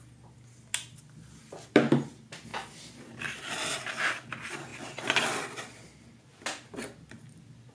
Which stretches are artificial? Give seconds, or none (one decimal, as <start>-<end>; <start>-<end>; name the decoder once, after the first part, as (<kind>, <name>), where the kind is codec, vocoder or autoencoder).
none